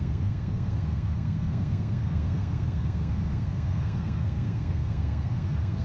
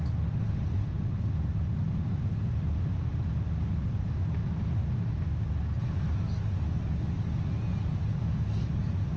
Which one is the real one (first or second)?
second